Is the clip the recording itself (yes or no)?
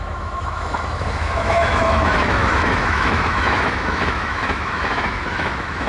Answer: no